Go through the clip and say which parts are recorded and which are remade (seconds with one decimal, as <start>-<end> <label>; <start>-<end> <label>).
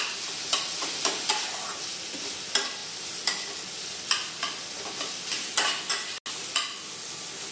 0.0-7.5 recorded